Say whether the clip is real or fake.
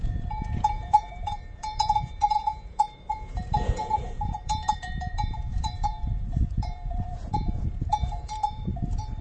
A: fake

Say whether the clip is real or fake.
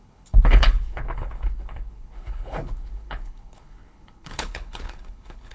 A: fake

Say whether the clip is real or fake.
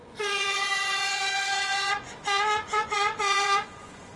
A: fake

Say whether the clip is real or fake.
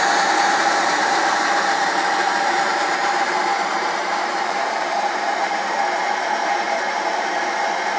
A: fake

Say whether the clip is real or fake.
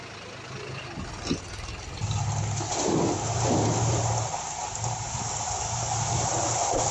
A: real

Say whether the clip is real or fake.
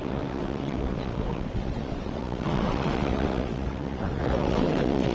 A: fake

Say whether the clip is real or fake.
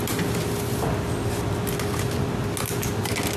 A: real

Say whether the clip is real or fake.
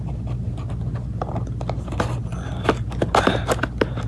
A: real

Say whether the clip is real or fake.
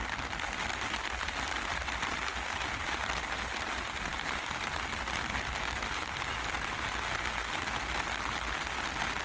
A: real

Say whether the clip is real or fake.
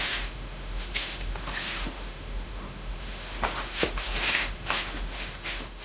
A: fake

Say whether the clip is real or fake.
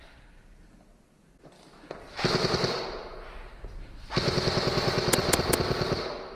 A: real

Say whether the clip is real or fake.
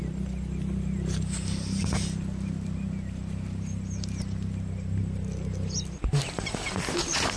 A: real